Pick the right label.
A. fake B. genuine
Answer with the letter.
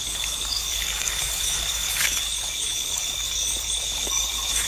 A